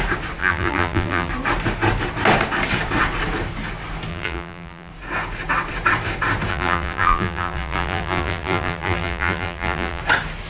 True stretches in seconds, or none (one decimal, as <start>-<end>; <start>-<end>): 0.0-0.4; 1.3-4.1; 4.9-6.5; 10.0-10.5